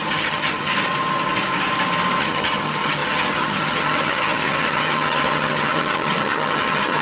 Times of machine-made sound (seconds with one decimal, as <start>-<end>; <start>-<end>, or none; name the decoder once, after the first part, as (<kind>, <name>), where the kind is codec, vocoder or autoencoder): 0.0-0.7 (vocoder, HiFi-GAN); 2.2-7.0